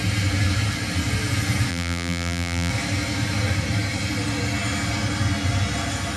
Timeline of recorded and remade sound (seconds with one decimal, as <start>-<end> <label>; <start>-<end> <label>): 0.0-1.7 recorded; 1.7-2.7 remade; 2.7-6.2 recorded